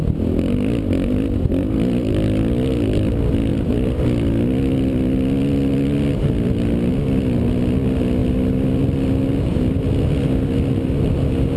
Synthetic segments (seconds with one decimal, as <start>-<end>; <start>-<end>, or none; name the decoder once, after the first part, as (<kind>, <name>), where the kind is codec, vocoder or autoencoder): none